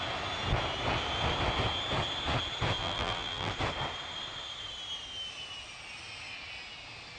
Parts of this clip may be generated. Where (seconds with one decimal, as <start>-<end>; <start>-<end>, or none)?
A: 2.8-3.5